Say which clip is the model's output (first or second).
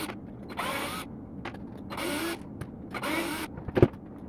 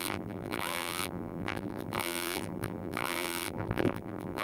second